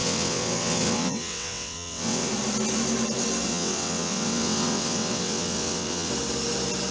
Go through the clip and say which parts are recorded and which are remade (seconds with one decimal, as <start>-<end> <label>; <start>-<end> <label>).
0.0-2.3 remade; 2.3-3.5 recorded; 3.5-6.1 remade; 6.1-6.9 recorded